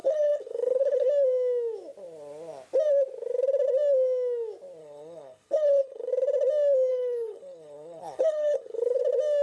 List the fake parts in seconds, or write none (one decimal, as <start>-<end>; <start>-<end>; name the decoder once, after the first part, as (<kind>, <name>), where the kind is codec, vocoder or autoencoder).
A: 0.0-1.1 (codec, HILCodec); 4.8-6.1; 6.9-9.0